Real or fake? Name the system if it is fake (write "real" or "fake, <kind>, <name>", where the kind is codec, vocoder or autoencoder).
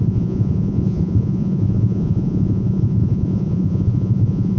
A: fake, vocoder, Vocos